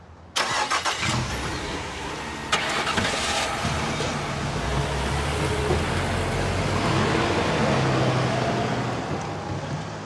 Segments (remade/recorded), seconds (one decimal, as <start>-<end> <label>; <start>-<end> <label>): 0.0-1.6 recorded; 1.6-2.1 remade; 2.1-10.1 recorded